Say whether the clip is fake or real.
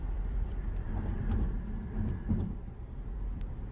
fake